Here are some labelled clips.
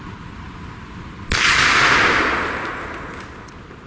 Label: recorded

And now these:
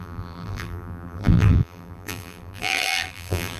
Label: remade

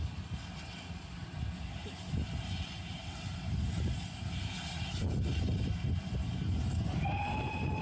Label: recorded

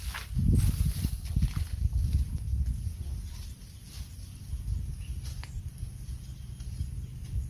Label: recorded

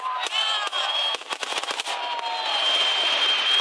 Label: recorded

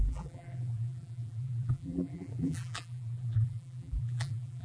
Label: remade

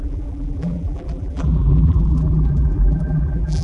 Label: remade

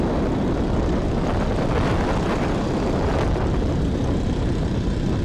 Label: recorded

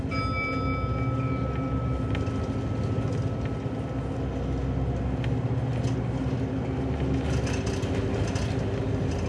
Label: recorded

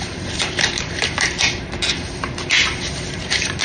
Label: remade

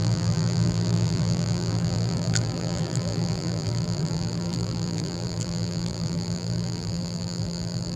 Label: remade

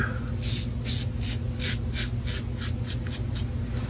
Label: recorded